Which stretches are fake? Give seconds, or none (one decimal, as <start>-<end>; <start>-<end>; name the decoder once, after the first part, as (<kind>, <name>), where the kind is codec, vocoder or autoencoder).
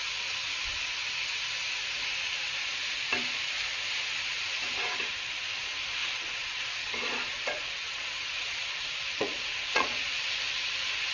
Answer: 6.0-10.3 (vocoder, Vocos)